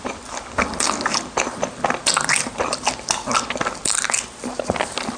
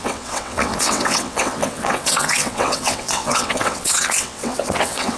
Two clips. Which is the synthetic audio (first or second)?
second